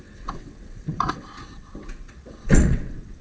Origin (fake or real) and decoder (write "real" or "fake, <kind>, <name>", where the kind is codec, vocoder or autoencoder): fake, vocoder, WaveNeXt